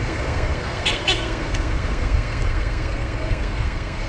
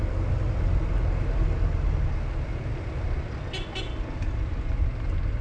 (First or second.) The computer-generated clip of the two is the first